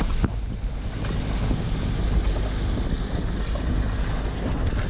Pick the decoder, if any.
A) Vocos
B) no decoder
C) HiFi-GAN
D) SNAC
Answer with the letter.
B